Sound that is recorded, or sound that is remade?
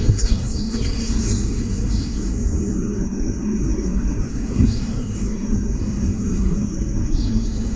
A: remade